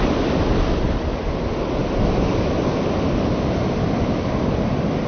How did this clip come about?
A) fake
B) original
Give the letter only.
B